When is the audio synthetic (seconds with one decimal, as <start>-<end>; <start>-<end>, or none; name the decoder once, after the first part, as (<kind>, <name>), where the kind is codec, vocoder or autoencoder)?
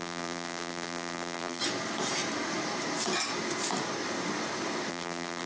0.0-1.6 (vocoder, BigVGAN v2); 4.9-5.5